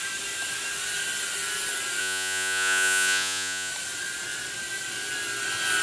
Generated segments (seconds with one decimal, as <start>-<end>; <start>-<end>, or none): 2.0-3.7